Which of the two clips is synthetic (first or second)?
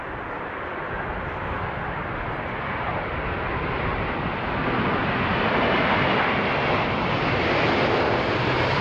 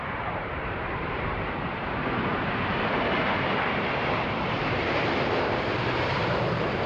second